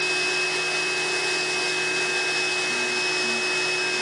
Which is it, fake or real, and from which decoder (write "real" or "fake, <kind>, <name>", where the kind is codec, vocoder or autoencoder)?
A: real